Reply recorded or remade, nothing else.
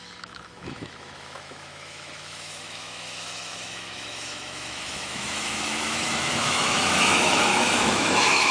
remade